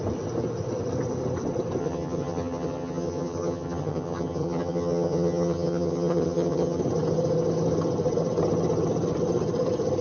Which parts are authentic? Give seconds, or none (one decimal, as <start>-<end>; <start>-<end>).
0.0-1.8; 6.8-10.0